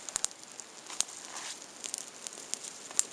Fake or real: real